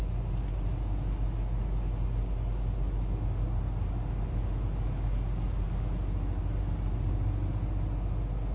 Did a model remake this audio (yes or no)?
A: no